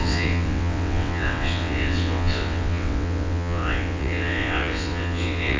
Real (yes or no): no